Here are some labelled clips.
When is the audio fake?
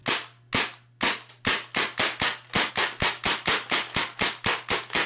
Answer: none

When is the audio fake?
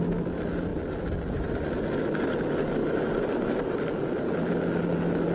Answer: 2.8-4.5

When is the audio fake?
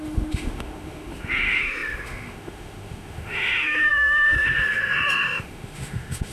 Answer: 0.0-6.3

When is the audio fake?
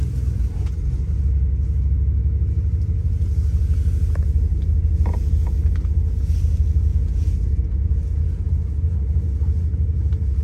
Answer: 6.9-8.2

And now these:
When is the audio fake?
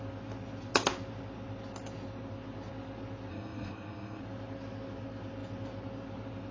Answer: 3.3-4.2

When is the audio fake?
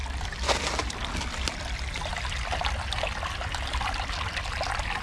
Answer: none